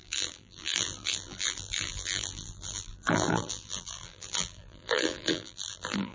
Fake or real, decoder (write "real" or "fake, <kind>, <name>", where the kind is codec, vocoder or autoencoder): fake, vocoder, BigVGAN v2